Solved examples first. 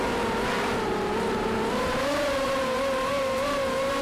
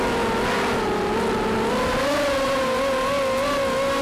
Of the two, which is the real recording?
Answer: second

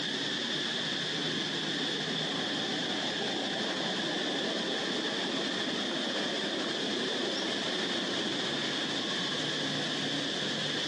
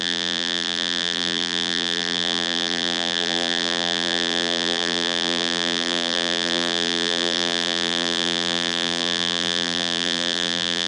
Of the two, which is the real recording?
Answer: first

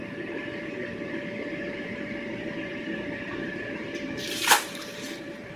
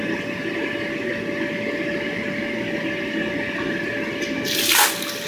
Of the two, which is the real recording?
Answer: second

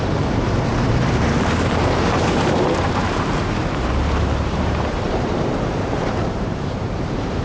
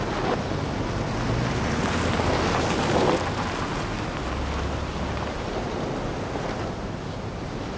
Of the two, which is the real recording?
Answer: second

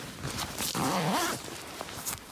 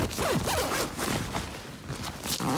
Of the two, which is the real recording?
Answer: second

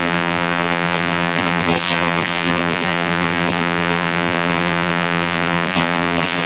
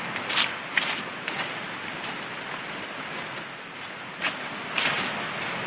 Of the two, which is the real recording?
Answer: second